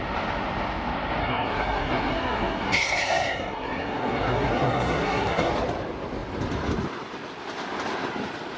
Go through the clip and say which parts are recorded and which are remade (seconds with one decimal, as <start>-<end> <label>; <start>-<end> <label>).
0.0-1.2 recorded; 1.2-5.5 remade; 5.5-8.6 recorded